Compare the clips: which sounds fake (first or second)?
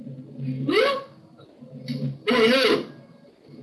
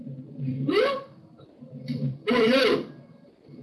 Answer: second